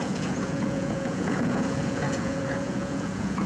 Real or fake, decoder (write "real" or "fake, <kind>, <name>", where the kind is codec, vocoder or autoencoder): fake, vocoder, Vocos